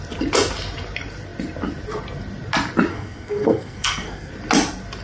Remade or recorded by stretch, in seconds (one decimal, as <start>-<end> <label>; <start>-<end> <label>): 0.0-2.9 recorded; 2.9-4.3 remade; 4.3-5.0 recorded